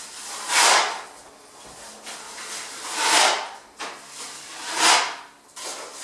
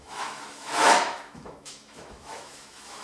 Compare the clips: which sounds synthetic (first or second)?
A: second